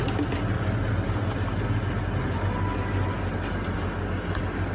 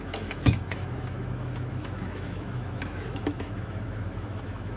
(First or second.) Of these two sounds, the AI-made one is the second